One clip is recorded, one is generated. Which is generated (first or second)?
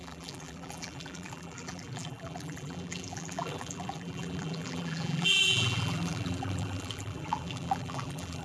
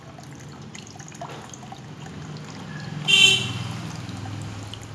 first